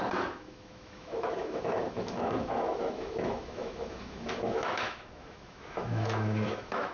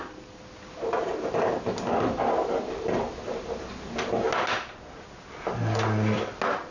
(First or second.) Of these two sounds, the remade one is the first